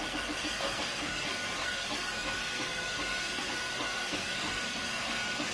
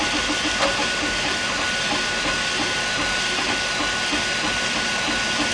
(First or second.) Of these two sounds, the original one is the second